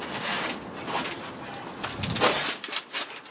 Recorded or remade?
recorded